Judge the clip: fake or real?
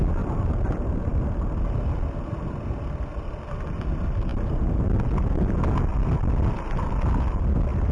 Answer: real